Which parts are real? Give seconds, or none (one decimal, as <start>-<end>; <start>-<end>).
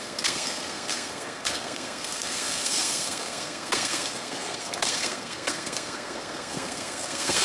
none